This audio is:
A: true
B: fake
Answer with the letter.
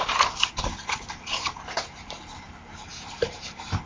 B